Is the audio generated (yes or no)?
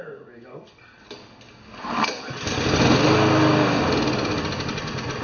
no